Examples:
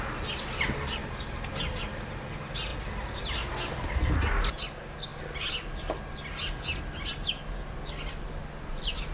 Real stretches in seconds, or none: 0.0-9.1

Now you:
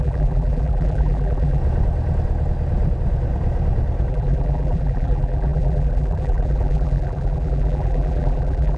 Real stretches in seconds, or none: 1.6-4.1